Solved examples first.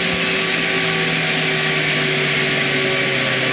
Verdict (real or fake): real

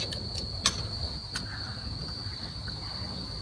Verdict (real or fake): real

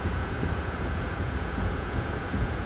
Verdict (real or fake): fake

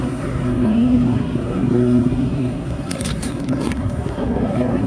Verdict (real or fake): fake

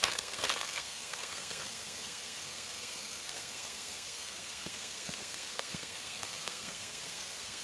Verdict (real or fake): fake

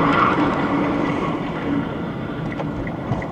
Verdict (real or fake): fake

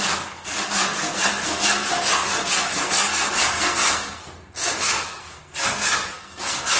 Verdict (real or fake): fake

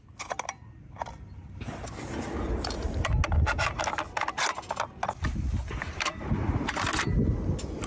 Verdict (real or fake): real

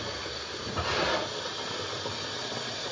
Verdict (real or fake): real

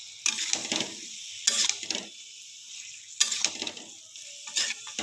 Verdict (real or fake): real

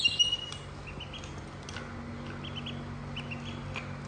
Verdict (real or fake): real